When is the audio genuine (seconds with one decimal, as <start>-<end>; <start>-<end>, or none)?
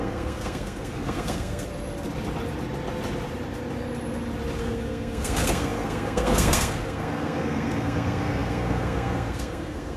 1.7-4.6